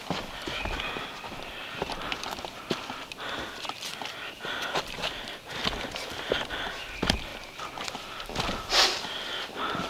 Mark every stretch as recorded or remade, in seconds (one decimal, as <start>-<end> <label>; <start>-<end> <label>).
0.0-9.9 recorded